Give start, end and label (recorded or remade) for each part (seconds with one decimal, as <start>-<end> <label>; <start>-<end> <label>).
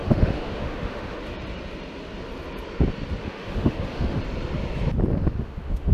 0.0-1.2 remade; 1.2-3.2 recorded; 3.2-4.2 remade; 4.2-5.1 recorded; 5.1-5.9 remade